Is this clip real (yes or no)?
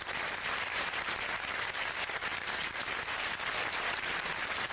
yes